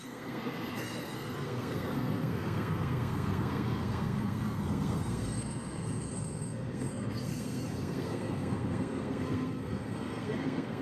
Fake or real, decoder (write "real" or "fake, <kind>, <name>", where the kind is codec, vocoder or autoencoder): fake, codec, SNAC